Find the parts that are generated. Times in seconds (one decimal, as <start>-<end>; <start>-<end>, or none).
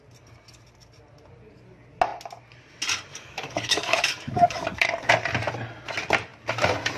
3.1-5.1